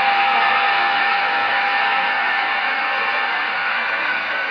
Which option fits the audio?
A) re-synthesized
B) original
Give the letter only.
A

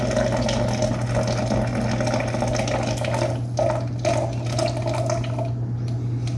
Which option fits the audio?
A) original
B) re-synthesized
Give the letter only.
A